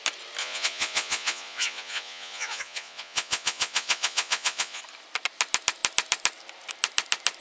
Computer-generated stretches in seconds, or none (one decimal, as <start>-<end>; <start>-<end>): 0.4-4.8